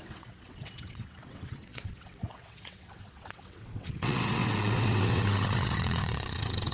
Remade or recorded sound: remade